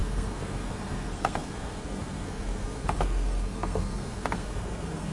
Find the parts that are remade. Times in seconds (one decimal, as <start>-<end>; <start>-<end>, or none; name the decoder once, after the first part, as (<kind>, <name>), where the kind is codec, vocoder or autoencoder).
0.0-5.1 (codec, SNAC)